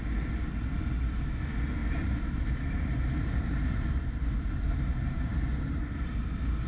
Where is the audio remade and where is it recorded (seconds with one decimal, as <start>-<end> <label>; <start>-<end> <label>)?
0.0-1.8 recorded; 1.8-5.8 remade; 5.8-6.7 recorded